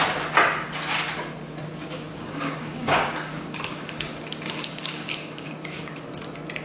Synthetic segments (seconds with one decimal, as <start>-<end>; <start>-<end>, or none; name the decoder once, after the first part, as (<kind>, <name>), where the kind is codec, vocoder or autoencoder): 2.1-6.1 (codec, DAC)